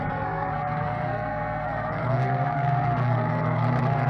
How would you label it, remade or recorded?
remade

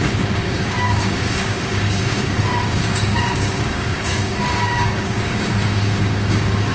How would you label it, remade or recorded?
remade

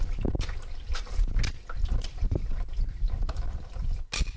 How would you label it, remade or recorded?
recorded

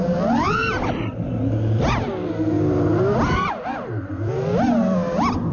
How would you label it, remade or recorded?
recorded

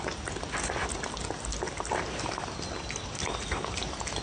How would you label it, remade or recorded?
recorded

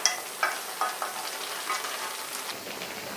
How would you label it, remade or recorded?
recorded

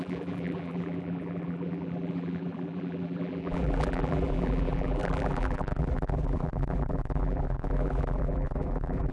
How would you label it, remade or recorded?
remade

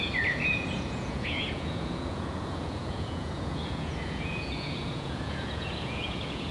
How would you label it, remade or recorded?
remade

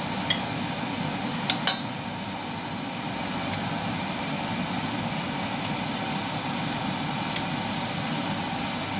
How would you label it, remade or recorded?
recorded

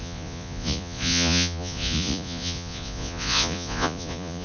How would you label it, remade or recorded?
remade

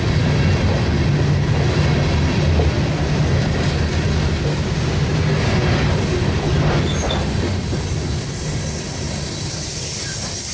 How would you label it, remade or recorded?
recorded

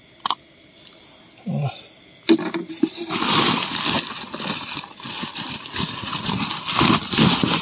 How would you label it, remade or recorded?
recorded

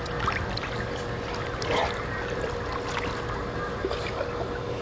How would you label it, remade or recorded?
recorded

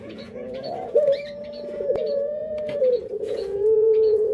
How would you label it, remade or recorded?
remade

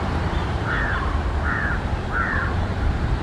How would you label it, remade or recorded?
remade